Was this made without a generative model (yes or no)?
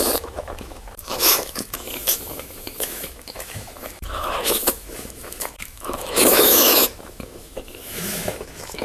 no